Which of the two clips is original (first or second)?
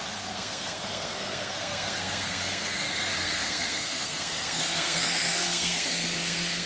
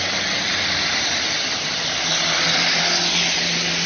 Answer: second